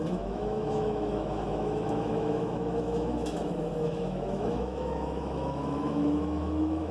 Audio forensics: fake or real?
fake